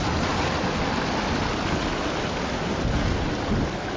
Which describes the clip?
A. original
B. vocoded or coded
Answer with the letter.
A